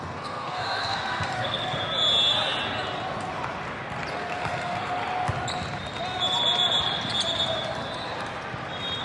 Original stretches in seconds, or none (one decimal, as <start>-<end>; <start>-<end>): 1.8-4.1; 5.0-9.0